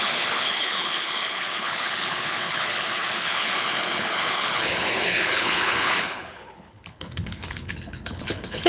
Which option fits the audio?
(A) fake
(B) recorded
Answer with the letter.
A